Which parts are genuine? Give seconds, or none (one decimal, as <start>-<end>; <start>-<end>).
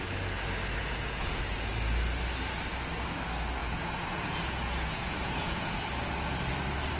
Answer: 0.0-0.8; 1.4-3.6; 5.8-7.0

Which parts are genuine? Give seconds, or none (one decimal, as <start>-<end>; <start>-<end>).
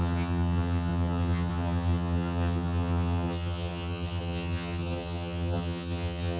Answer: none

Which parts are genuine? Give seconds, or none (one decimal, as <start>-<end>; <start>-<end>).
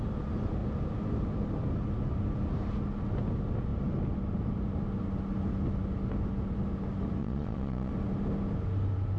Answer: 0.0-7.2; 7.9-9.2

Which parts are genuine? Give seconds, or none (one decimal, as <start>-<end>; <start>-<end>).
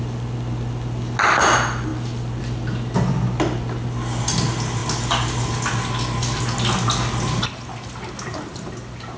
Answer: 0.0-9.2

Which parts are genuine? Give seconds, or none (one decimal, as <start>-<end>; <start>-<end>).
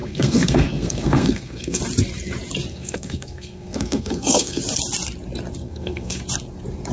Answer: 1.8-2.7; 4.6-5.6; 6.2-6.9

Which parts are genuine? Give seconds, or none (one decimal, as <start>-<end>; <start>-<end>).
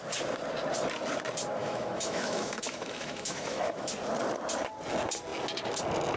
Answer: 0.0-1.6; 3.9-6.2